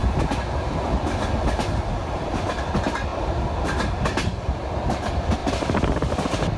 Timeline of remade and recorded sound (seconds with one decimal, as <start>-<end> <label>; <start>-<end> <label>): 0.0-2.0 recorded; 2.0-3.1 remade; 3.1-4.4 recorded; 4.4-6.6 remade